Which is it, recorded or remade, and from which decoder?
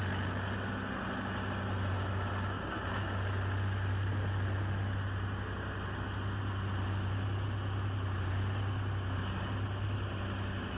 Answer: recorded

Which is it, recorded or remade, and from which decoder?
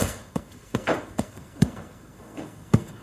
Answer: remade, codec, SNAC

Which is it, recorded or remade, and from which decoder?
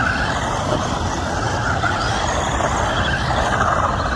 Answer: recorded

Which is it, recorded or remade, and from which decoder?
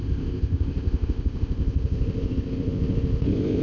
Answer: remade, codec, ZipCodec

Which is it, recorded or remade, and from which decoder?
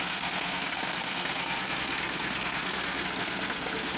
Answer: remade, codec, SNAC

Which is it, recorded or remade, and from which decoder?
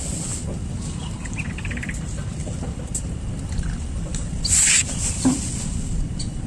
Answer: recorded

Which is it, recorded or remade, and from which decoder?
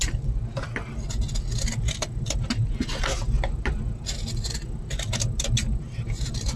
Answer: recorded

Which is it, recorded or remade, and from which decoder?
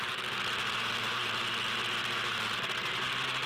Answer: recorded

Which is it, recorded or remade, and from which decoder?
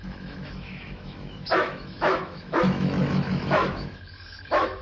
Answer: remade, autoencoder, DAC-VAE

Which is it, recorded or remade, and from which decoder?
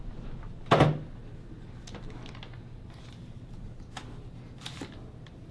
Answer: recorded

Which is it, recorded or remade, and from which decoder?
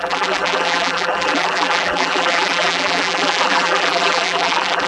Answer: remade, vocoder, BigVGAN v2